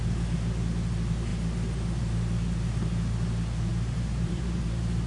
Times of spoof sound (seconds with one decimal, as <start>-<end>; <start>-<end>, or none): 3.7-5.1